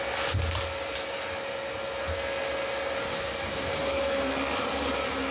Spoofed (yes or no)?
no